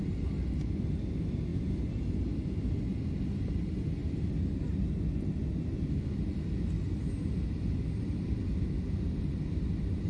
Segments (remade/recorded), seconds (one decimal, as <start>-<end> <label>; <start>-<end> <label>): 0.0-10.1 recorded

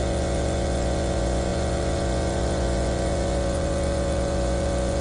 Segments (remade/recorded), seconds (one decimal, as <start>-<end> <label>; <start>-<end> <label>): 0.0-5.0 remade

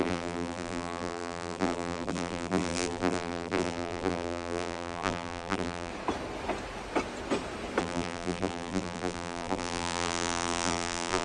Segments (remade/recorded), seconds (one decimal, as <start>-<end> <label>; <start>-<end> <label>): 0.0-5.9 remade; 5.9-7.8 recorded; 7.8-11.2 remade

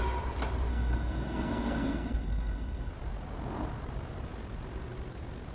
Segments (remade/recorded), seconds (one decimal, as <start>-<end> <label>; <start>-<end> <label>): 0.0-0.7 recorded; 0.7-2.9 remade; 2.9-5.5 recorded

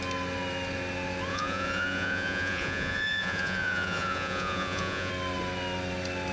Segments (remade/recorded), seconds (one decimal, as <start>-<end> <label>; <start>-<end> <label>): 0.0-1.3 recorded; 1.3-5.1 remade; 5.1-6.3 recorded